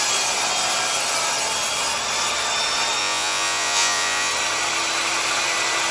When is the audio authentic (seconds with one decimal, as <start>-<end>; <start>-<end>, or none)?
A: 0.0-3.0; 4.3-5.9